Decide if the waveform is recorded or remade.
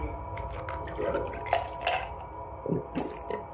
recorded